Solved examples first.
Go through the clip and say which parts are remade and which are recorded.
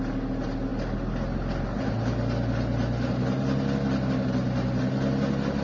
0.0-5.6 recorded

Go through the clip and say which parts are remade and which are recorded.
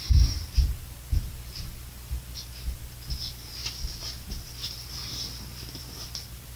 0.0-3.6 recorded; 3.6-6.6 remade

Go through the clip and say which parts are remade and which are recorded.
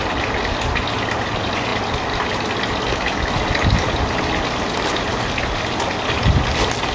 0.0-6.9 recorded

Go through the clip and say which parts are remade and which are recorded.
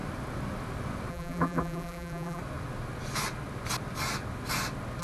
0.0-1.1 recorded; 1.1-2.4 remade; 2.4-5.0 recorded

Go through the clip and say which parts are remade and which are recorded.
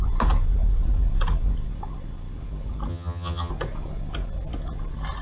0.0-2.9 recorded; 2.9-3.5 remade; 3.5-5.2 recorded